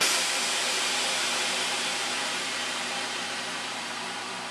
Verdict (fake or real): fake